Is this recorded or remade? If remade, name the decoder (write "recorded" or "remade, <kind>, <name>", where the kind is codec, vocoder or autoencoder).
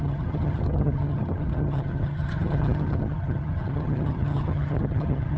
remade, vocoder, HiFi-GAN